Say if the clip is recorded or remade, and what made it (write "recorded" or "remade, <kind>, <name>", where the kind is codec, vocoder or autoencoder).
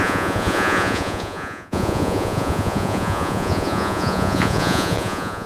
remade, vocoder, Vocos